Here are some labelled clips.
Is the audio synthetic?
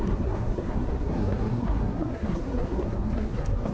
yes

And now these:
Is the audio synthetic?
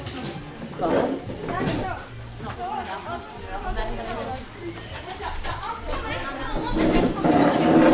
no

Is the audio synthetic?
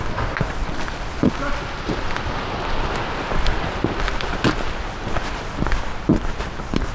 no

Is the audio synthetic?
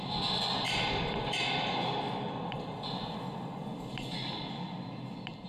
no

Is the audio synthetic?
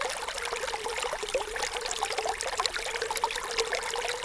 no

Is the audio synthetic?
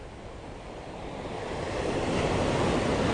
no